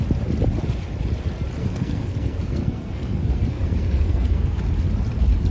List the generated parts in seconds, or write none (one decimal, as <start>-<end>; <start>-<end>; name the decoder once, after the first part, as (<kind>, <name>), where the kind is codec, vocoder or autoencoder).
1.6-4.6 (codec, SNAC)